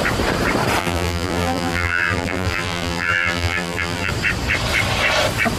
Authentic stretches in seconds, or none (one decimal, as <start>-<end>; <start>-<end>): 0.0-0.8; 4.1-5.6